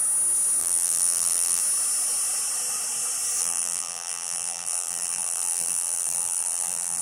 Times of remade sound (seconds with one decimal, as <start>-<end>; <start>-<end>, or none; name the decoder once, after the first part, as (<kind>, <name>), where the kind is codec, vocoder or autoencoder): 0.6-1.6 (vocoder, BigVGAN v2); 3.4-7.0